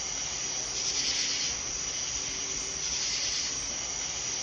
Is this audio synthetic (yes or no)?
no